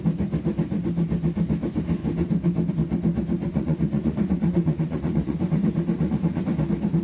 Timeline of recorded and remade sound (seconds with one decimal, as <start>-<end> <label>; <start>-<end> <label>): 0.0-3.5 recorded; 3.5-6.4 remade; 6.4-7.0 recorded